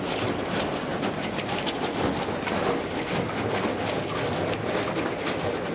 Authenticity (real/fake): real